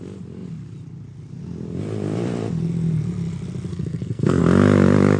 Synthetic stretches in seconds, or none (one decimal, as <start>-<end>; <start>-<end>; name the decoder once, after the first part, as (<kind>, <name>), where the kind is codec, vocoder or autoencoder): 3.7-4.4 (codec, SNAC)

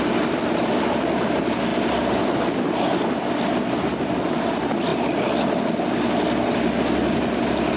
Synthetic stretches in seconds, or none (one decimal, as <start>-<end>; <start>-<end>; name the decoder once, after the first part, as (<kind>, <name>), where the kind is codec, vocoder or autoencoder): none

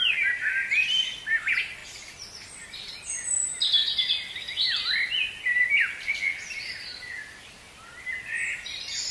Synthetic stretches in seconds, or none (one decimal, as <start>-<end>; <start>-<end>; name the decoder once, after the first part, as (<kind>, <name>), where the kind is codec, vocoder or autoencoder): none

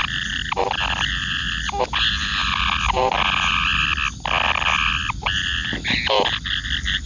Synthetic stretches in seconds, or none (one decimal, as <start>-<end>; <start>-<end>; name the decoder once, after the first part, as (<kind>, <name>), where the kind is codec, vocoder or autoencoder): none

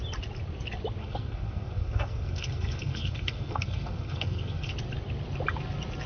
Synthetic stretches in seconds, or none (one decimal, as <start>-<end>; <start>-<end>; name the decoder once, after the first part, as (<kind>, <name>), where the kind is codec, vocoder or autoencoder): 1.0-4.7 (codec, SNAC)

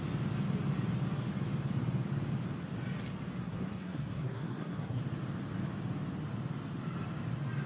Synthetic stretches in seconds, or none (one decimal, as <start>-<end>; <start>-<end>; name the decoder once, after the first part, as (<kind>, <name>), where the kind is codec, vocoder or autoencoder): 3.4-5.0 (codec, SNAC)

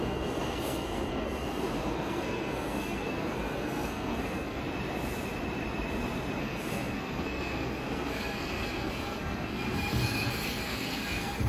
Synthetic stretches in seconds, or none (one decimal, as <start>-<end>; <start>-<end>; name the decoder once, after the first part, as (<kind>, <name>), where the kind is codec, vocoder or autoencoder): 0.0-4.6 (codec, SNAC); 6.4-11.5

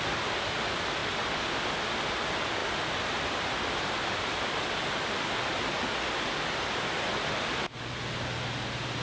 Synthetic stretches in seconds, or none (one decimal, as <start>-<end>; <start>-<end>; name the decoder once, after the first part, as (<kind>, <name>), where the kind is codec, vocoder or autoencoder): none